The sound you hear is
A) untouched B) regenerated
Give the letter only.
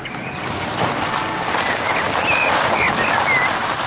A